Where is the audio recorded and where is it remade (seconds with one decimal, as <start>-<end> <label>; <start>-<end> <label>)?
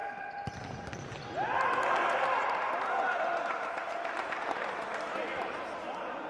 0.0-6.3 recorded